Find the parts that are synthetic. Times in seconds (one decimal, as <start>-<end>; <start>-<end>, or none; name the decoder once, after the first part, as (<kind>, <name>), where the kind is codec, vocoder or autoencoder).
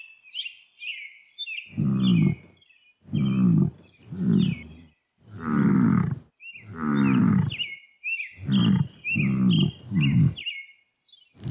none